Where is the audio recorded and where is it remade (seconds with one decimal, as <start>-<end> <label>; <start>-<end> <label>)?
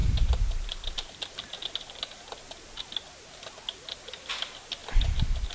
0.0-5.5 recorded